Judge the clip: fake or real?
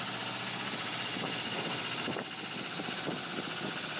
real